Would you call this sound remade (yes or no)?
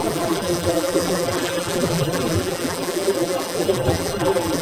yes